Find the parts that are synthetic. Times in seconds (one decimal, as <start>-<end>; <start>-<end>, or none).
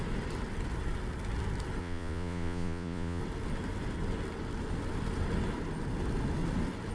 1.8-3.2